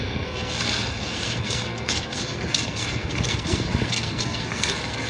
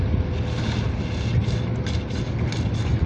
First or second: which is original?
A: second